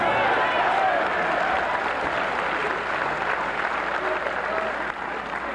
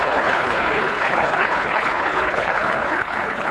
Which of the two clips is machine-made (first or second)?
second